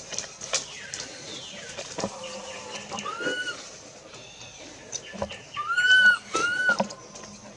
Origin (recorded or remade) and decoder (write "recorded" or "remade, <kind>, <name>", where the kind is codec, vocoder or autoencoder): recorded